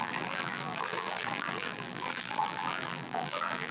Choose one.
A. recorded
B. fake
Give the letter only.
B